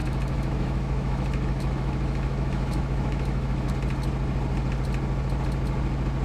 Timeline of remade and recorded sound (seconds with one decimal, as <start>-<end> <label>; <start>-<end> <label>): 0.0-3.7 remade; 3.7-6.2 recorded